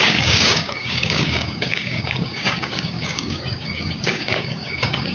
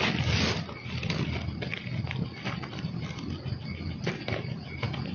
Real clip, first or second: second